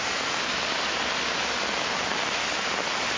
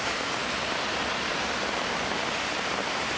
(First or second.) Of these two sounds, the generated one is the second